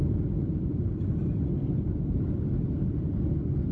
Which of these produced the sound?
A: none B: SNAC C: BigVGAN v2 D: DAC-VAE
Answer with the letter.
A